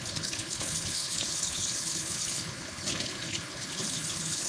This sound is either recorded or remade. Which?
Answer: remade